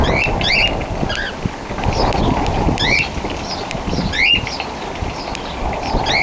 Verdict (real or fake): real